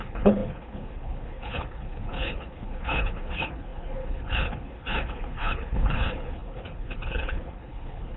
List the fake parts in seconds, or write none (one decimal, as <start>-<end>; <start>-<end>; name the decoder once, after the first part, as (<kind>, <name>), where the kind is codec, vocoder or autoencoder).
0.0-8.2 (codec, HILCodec)